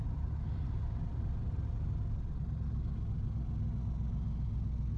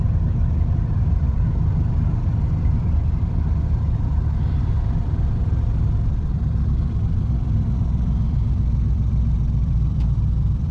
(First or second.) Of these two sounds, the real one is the first